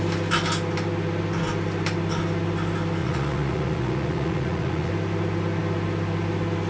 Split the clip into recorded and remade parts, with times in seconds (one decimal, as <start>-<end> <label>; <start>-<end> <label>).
0.0-3.0 recorded; 3.0-4.9 remade; 4.9-6.7 recorded